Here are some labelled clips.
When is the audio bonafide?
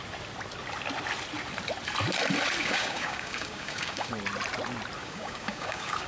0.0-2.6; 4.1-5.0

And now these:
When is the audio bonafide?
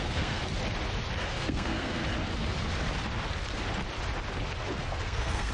0.4-1.3; 2.0-5.0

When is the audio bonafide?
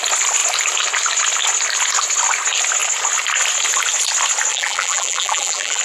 0.0-4.5